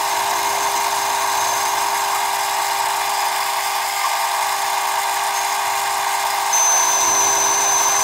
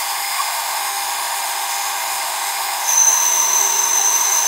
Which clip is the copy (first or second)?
second